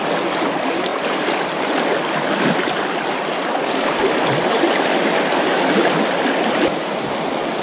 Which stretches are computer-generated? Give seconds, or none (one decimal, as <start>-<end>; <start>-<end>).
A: none